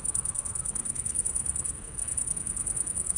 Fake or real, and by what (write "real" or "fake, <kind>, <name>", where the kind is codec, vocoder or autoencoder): fake, codec, SNAC